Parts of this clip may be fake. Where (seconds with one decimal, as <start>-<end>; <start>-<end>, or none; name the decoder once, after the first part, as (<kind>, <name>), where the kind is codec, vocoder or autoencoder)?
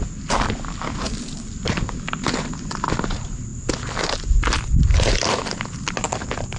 none